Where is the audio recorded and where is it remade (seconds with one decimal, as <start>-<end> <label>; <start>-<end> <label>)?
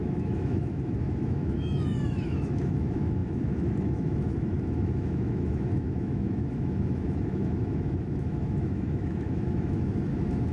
0.0-10.5 remade